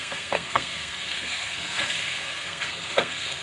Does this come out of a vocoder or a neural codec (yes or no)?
yes